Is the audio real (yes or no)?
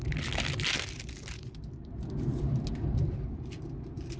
yes